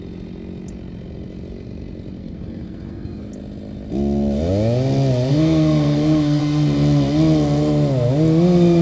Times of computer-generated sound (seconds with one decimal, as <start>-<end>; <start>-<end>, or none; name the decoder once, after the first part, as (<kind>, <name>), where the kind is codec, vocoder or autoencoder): 2.2-3.3 (codec, SNAC); 5.3-6.4